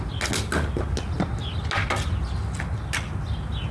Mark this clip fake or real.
real